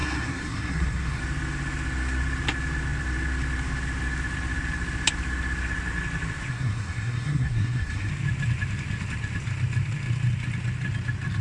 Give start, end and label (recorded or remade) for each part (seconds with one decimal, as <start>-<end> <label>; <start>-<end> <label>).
0.0-1.2 remade; 1.2-6.5 recorded; 6.5-8.1 remade; 8.1-11.4 recorded